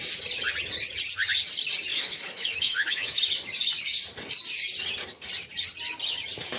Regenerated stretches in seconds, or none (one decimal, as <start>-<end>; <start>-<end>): 1.9-3.2